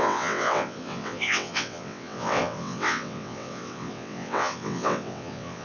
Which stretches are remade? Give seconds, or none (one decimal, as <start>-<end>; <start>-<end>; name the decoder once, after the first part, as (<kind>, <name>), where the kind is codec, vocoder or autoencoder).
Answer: 0.0-5.6 (vocoder, WaveNeXt)